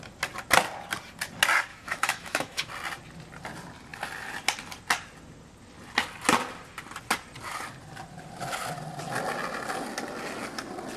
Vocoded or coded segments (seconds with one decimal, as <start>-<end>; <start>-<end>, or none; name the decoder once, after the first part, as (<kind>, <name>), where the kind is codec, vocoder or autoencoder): 1.7-2.7 (autoencoder, DAC-VAE)